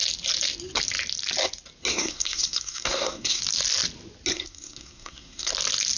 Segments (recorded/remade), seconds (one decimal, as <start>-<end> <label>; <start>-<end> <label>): 0.0-1.9 recorded; 1.9-3.4 remade; 3.4-4.3 recorded; 4.3-5.5 remade; 5.5-6.0 recorded